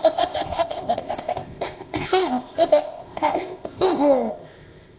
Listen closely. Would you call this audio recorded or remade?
remade